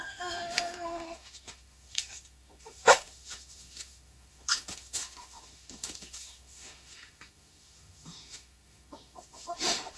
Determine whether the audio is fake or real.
fake